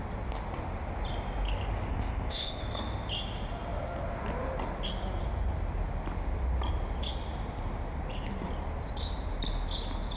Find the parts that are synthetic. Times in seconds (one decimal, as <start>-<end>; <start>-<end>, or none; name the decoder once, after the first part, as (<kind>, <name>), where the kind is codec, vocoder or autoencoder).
1.9-2.6 (codec, ZipCodec)